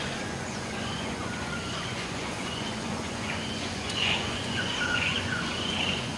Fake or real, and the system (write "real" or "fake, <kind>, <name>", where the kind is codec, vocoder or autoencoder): fake, vocoder, Vocos